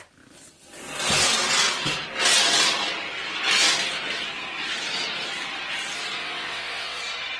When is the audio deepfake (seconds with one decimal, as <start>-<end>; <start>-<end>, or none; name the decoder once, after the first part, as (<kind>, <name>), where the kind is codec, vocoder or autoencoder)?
6.2-7.0 (vocoder, WaveNeXt)